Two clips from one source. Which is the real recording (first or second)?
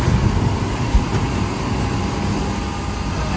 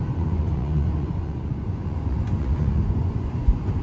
first